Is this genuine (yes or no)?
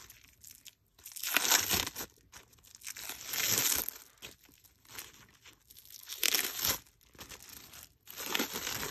yes